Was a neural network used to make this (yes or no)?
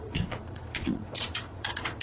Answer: yes